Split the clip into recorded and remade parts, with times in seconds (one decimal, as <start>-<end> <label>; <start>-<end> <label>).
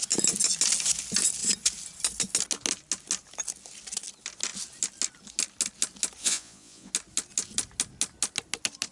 0.0-6.2 recorded; 6.2-6.9 remade; 6.9-8.9 recorded